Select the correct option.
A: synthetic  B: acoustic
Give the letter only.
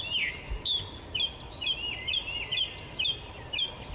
B